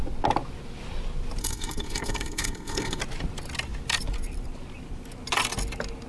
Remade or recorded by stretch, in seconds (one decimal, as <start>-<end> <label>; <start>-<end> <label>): 0.0-1.4 recorded; 1.4-3.0 remade; 3.0-6.1 recorded